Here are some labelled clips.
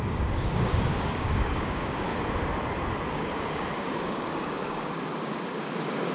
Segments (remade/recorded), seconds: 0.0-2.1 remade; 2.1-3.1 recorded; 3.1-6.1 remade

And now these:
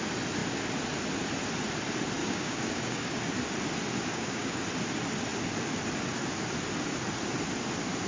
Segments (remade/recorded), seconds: 0.0-2.2 recorded; 2.2-3.2 remade; 3.2-4.1 recorded; 4.1-4.6 remade; 4.6-8.1 recorded

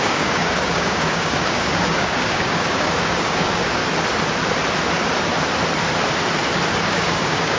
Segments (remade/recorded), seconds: 0.0-3.8 remade; 3.8-6.8 recorded; 6.8-7.6 remade